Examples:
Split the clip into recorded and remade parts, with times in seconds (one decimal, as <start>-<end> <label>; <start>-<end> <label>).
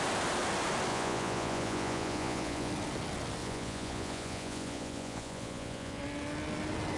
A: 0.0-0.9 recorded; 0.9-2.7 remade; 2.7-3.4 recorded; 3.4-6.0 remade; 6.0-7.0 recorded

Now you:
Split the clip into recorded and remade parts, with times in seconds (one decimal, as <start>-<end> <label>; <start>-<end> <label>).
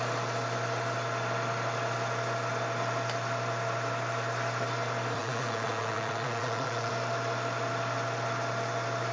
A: 0.0-5.2 recorded; 5.2-6.9 remade; 6.9-9.1 recorded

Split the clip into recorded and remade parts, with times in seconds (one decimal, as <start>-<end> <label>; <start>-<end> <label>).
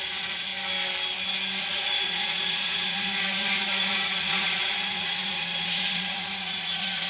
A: 0.0-0.5 remade; 0.5-1.6 recorded; 1.6-7.1 remade